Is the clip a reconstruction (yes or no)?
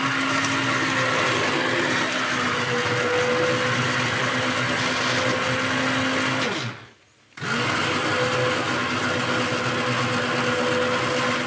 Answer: no